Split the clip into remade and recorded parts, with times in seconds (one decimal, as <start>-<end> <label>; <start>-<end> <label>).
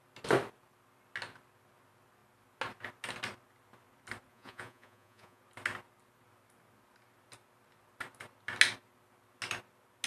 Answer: 0.0-4.3 recorded; 4.3-5.4 remade; 5.4-10.1 recorded